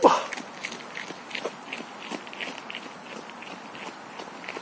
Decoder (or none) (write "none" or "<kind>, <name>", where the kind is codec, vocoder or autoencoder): none